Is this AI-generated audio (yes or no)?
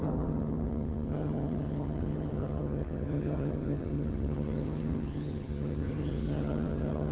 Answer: yes